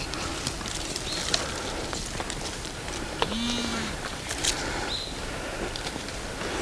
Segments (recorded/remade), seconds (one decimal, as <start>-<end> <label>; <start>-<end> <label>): 0.0-3.7 recorded; 3.7-4.3 remade; 4.3-6.6 recorded